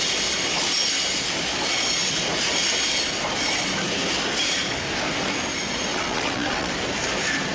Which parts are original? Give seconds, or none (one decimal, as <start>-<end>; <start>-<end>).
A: 0.0-5.9; 6.7-7.5